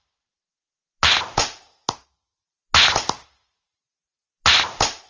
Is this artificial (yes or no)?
no